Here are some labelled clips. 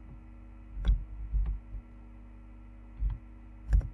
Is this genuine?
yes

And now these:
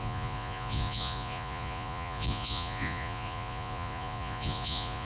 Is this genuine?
no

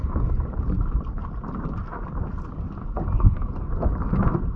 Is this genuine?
yes